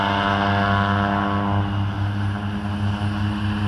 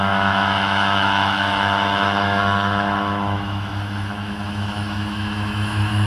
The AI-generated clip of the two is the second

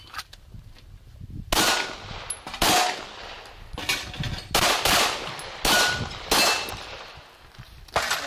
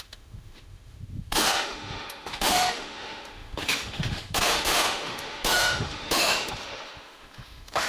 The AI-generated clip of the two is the second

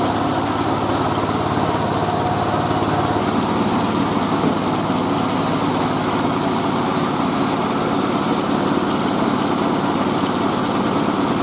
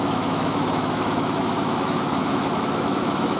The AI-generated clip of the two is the second